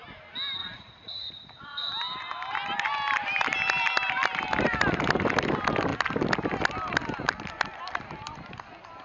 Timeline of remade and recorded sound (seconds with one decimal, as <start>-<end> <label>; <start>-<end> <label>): 0.0-0.6 recorded; 0.6-1.9 remade; 1.9-9.0 recorded